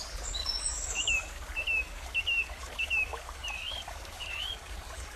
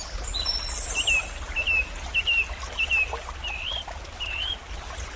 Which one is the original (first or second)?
second